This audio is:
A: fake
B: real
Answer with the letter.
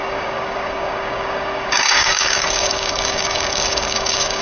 A